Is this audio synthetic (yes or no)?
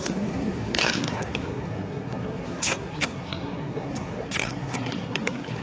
yes